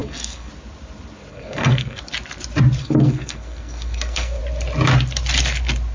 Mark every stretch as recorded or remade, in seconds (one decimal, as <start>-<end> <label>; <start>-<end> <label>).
0.0-0.5 remade; 0.5-1.3 recorded; 1.3-2.0 remade; 2.0-2.8 recorded; 2.8-4.4 remade; 4.4-5.9 recorded